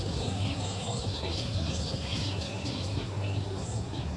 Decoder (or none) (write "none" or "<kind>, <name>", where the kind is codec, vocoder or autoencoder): codec, SNAC